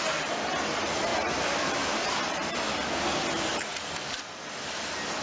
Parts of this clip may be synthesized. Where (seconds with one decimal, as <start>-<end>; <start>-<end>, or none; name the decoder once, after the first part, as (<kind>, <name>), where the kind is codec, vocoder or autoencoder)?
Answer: none